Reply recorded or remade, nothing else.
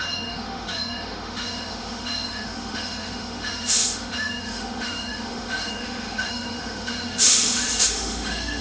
remade